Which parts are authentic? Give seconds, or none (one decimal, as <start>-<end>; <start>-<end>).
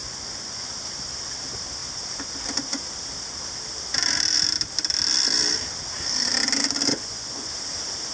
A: 0.7-6.9; 7.5-8.1